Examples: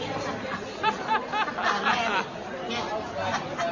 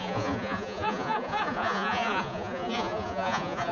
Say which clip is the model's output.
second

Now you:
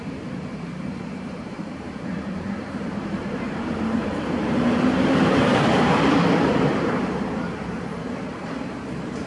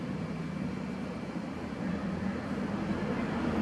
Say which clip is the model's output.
first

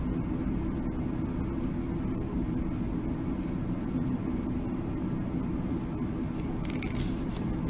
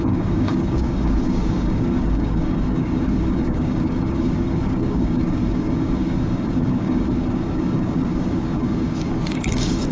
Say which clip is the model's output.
second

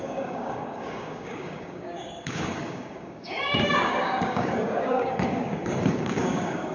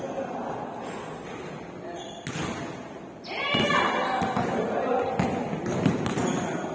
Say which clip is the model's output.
first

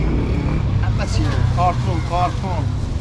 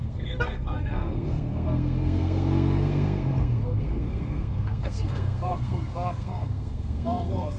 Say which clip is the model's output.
second